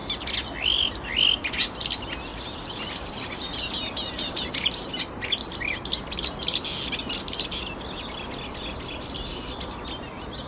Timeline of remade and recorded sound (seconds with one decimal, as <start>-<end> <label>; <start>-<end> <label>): 0.0-2.3 recorded; 2.3-5.2 remade; 5.2-10.5 recorded